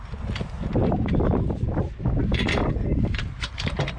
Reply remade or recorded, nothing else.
recorded